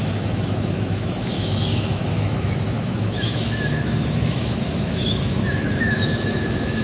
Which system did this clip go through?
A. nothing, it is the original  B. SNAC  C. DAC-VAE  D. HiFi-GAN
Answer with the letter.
C